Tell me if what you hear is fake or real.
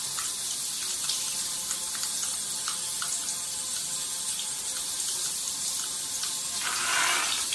real